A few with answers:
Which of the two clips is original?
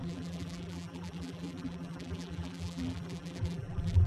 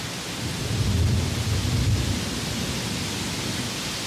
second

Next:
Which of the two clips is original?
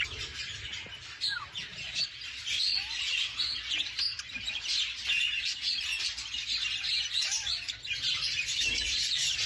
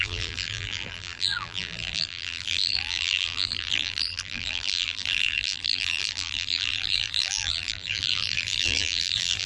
first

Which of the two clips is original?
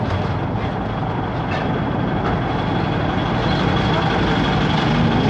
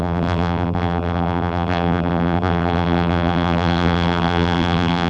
first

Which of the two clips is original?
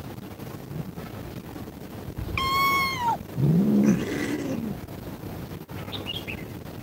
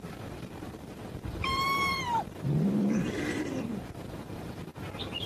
first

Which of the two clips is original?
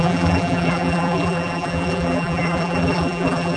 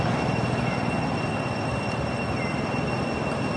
second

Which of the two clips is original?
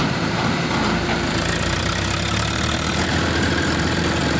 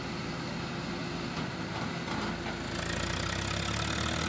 second